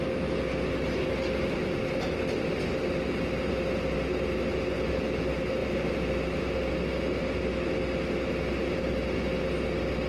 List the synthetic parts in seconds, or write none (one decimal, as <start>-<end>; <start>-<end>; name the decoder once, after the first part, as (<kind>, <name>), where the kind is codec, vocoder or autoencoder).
none